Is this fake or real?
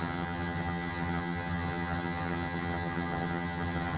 fake